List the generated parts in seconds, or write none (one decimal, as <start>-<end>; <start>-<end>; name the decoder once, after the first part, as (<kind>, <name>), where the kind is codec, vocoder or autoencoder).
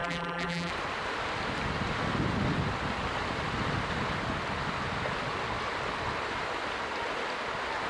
0.0-0.7 (vocoder, BigVGAN v2)